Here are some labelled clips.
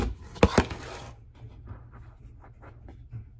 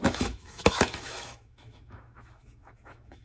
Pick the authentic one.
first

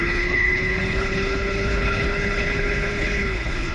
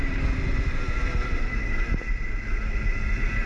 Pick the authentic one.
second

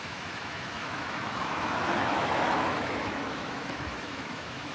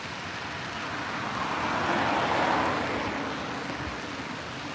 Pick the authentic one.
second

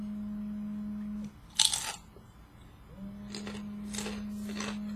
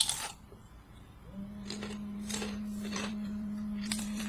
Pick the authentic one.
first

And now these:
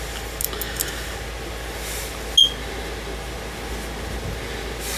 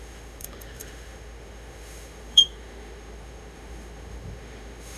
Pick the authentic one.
first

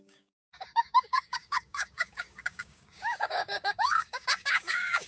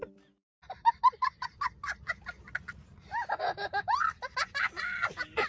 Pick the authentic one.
second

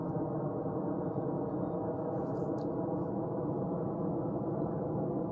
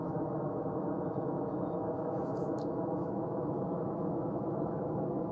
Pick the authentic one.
first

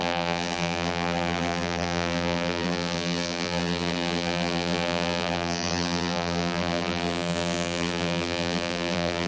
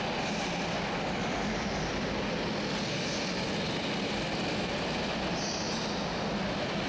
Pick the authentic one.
second